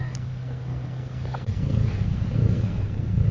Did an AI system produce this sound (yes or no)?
yes